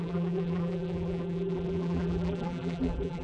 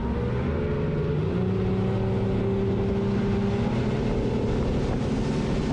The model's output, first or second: first